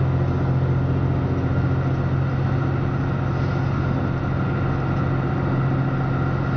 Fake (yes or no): no